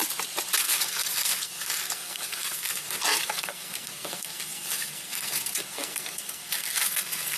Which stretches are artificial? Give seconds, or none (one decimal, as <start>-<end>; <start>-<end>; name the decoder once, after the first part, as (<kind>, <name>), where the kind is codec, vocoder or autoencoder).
0.6-7.4 (codec, SNAC)